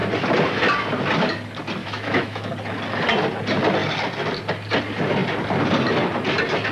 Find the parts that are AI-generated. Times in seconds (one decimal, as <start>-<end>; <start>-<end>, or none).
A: 1.8-2.5